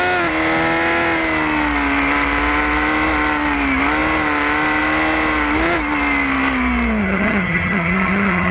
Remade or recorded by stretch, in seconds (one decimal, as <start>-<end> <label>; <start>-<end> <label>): 0.0-7.0 recorded; 7.0-8.5 remade